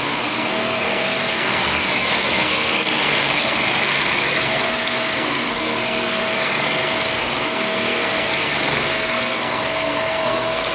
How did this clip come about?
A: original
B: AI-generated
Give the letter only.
B